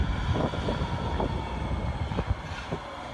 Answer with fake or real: real